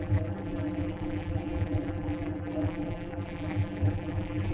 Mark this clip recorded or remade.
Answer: remade